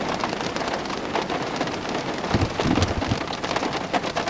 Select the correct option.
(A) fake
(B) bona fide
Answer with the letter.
B